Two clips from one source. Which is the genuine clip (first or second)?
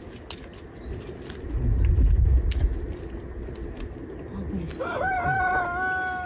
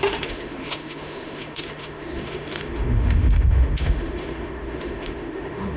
first